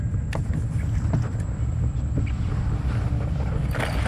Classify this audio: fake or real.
real